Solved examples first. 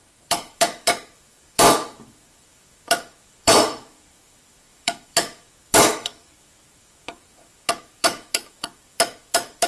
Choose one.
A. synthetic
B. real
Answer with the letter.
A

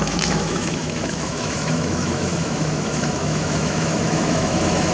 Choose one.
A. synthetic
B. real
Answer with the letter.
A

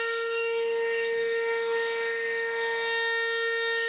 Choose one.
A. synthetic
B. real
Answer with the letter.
A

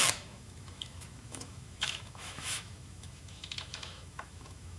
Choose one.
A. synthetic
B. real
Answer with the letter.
A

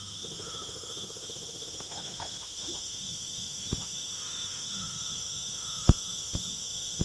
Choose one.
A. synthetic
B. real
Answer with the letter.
A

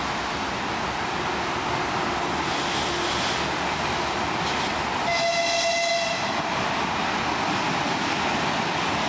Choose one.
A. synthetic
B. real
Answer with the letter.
B